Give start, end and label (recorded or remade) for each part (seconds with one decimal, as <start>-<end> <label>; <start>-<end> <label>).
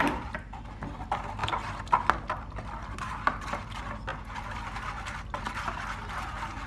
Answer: 0.0-6.7 recorded